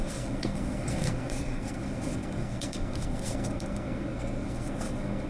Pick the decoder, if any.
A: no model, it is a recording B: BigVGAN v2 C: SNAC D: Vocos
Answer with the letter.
C